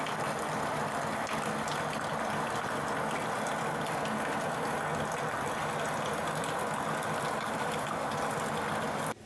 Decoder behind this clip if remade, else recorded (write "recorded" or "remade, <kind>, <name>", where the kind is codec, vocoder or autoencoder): recorded